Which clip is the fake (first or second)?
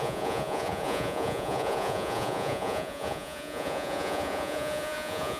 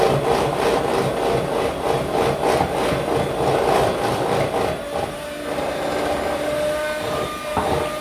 first